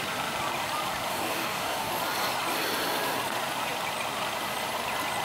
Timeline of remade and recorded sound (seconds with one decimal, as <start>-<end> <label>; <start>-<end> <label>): 0.0-1.1 recorded; 1.1-1.9 remade; 1.9-5.2 recorded